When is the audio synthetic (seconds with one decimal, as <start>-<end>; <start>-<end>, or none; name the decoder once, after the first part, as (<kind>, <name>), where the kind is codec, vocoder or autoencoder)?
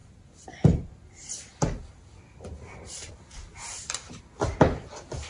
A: 0.0-1.1 (vocoder, BigVGAN v2); 2.5-4.2